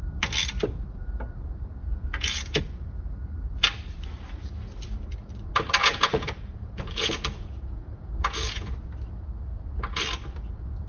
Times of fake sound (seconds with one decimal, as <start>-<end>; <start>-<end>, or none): 1.8-2.6; 5.8-8.7